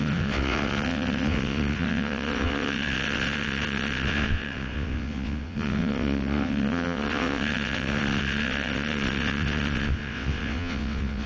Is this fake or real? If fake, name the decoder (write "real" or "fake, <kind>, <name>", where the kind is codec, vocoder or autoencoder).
fake, vocoder, WaveNeXt